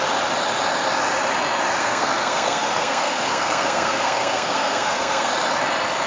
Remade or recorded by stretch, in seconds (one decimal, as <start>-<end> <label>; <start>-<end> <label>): 0.0-1.8 recorded; 1.8-5.3 remade; 5.3-6.1 recorded